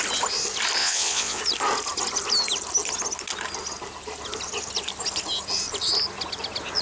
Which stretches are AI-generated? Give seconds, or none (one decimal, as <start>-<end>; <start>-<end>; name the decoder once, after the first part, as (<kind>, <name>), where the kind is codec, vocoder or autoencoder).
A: 0.8-1.4 (vocoder, WaveNeXt)